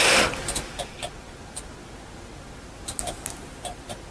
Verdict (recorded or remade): recorded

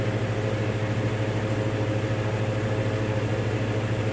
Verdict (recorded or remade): recorded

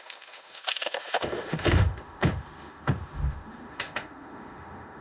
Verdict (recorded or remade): remade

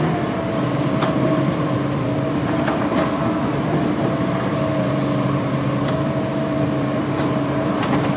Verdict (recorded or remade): remade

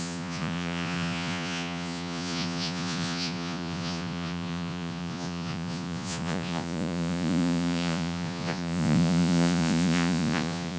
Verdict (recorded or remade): remade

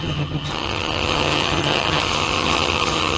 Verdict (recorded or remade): remade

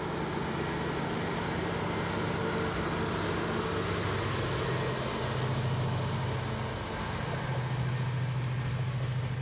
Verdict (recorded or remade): recorded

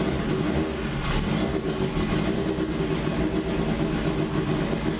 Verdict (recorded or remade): recorded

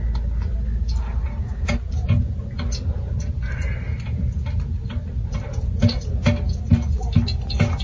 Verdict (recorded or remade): recorded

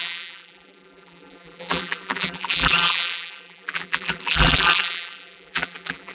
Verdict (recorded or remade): remade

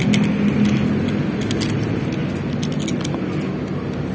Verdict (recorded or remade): recorded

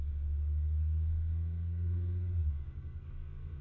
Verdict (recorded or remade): remade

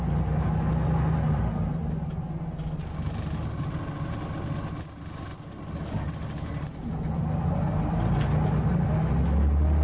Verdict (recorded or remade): recorded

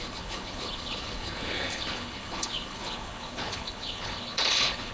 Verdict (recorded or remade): remade